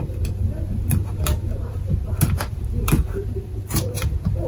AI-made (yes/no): yes